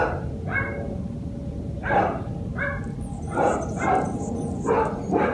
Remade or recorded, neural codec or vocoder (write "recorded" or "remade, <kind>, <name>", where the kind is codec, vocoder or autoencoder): recorded